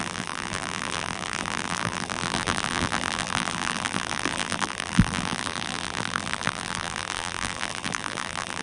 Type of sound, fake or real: fake